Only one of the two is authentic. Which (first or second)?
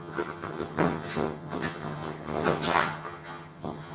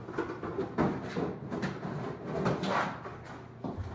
second